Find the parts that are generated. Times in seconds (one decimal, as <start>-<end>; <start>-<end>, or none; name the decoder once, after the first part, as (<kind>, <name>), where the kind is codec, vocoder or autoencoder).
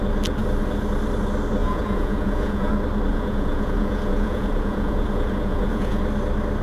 1.6-2.7 (vocoder, Vocos); 3.1-6.0